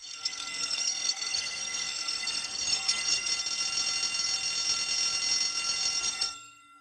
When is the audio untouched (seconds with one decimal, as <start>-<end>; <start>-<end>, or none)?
3.3-6.0